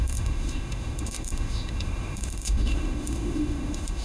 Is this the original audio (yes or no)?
no